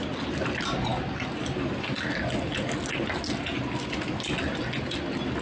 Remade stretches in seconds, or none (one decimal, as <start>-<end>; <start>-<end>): none